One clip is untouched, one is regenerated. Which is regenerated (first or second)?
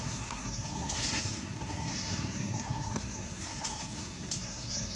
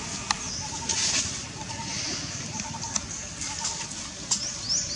first